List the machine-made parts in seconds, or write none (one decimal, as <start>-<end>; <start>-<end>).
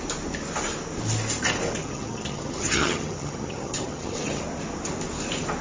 1.8-4.4